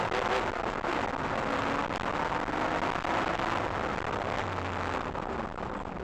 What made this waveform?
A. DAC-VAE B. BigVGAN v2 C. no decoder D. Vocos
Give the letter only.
C